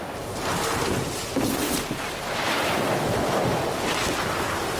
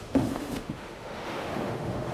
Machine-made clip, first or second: second